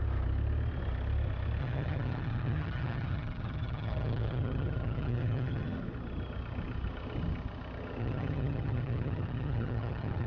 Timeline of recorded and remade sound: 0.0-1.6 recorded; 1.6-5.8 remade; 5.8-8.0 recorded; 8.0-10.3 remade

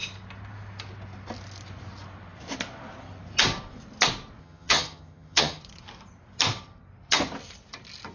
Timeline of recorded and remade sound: 0.0-4.4 recorded; 4.4-5.6 remade; 5.6-8.1 recorded

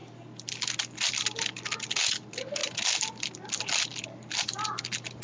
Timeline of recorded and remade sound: 0.0-5.2 recorded